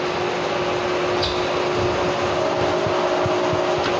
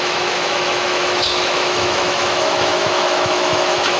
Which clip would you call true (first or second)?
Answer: first